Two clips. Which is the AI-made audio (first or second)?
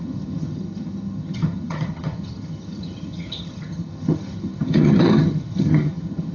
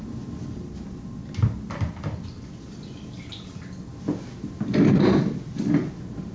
first